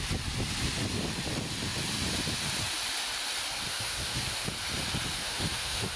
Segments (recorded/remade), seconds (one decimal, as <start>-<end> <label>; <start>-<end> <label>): 0.0-3.7 recorded; 3.7-4.5 remade; 4.5-5.2 recorded; 5.2-6.0 remade